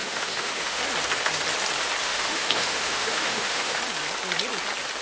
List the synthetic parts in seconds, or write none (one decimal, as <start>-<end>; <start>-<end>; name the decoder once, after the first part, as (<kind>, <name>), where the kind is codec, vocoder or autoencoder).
0.0-0.8 (autoencoder, DAC-VAE); 2.0-3.8